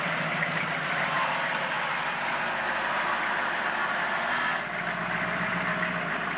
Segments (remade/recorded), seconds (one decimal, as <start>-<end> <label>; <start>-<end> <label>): 0.0-6.4 recorded